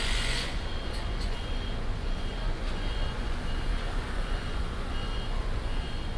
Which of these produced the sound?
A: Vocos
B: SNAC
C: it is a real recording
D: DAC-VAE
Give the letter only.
A